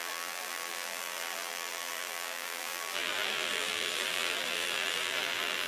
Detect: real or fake fake